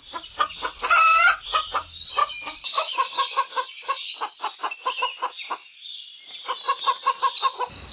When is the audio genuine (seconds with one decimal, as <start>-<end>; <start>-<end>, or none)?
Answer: 0.0-2.2; 4.2-7.9